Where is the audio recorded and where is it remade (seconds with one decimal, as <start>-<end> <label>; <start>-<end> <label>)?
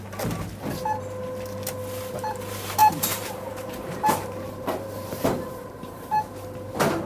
0.0-2.8 recorded; 2.8-6.2 remade; 6.2-7.1 recorded